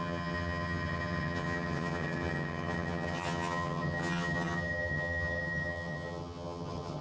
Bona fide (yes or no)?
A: no